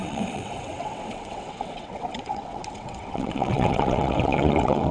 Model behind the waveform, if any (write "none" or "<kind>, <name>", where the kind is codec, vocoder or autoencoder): vocoder, WaveNeXt